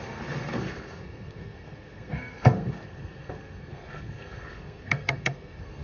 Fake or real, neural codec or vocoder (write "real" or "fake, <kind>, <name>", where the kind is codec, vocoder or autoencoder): fake, codec, SNAC